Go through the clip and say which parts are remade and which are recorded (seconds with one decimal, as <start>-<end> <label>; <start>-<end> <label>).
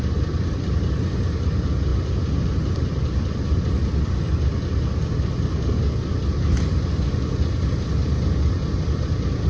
0.0-9.5 recorded